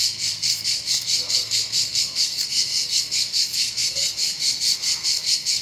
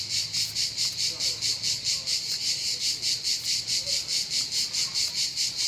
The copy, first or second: first